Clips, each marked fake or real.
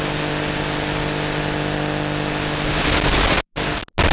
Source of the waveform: real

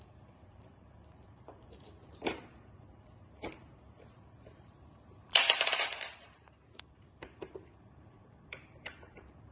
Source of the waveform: fake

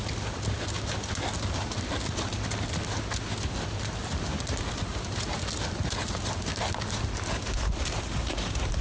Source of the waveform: real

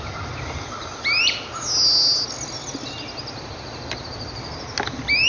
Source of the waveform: real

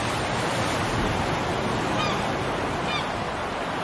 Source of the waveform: fake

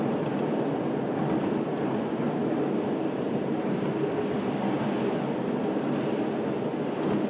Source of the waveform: real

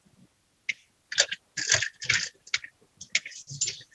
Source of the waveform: real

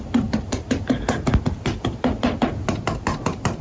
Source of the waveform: fake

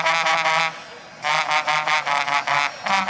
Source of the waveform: real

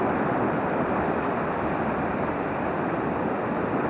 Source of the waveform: real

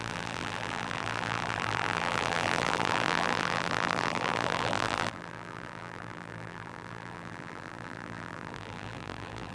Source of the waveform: fake